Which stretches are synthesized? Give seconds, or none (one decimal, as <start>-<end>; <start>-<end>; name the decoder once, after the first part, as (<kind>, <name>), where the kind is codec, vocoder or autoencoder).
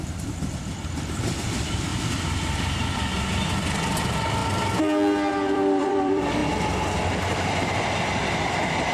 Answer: 0.0-1.9 (vocoder, BigVGAN v2); 4.0-4.4; 5.3-6.4; 7.5-8.9